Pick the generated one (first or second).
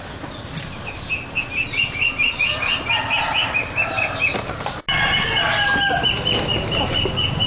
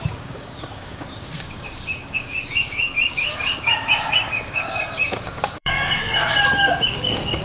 second